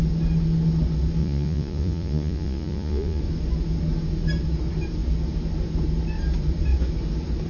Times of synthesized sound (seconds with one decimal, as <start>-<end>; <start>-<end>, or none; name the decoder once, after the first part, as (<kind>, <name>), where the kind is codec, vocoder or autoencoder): 1.2-3.2 (vocoder, Vocos)